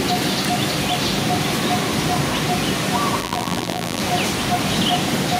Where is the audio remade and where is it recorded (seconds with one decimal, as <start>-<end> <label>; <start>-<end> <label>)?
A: 0.0-3.2 recorded; 3.2-4.0 remade; 4.0-5.4 recorded